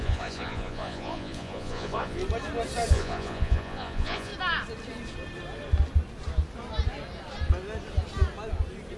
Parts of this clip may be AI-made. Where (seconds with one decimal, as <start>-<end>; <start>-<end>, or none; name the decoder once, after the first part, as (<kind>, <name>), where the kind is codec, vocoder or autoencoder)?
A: 0.0-2.2 (vocoder, Vocos); 2.9-4.3